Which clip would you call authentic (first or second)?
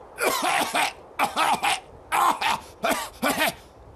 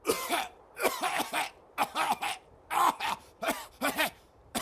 first